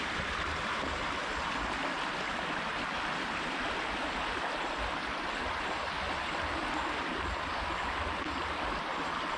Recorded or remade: recorded